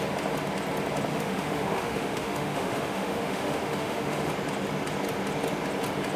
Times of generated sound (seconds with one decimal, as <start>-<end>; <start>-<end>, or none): 1.1-4.3